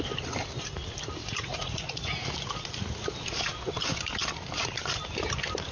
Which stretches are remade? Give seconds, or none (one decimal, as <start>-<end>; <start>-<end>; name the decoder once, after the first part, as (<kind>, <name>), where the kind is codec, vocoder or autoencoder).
1.2-2.3 (vocoder, Vocos)